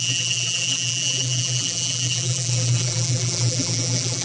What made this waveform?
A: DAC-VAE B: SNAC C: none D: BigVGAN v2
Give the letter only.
D